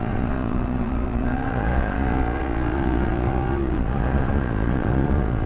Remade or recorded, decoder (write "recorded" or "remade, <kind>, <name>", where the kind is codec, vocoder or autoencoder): remade, vocoder, Vocos